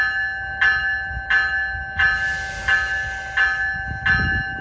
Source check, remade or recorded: recorded